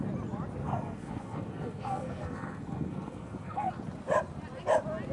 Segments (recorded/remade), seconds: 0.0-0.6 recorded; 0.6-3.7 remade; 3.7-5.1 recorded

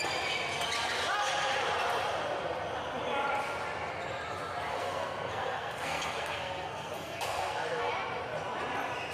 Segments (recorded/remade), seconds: 0.0-4.7 recorded; 4.7-7.9 remade; 7.9-9.1 recorded

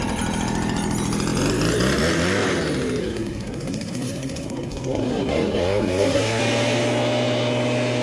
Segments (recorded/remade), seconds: 0.0-3.0 recorded; 3.0-6.4 remade; 6.4-8.0 recorded

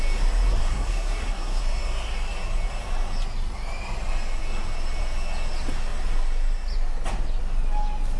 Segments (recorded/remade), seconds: 0.0-0.6 recorded; 0.6-1.6 remade; 1.6-8.2 recorded

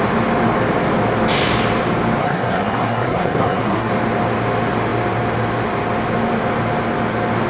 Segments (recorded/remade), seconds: 0.0-2.2 recorded; 2.2-3.9 remade; 3.9-7.5 recorded